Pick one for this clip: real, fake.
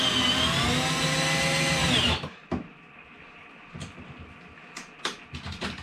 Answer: real